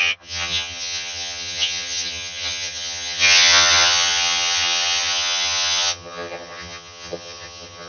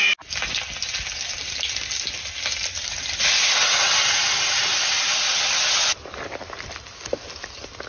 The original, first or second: second